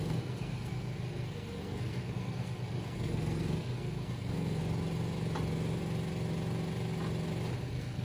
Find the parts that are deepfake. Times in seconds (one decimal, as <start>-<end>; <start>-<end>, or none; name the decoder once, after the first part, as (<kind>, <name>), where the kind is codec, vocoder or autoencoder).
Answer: 0.0-4.6 (codec, SNAC); 7.6-8.0